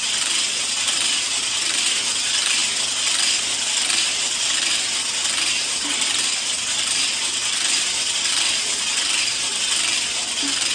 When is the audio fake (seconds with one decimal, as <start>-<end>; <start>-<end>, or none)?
none